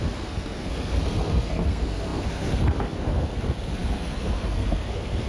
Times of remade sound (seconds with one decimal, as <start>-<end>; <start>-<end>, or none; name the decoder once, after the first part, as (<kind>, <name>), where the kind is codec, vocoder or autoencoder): 0.0-5.3 (codec, SNAC)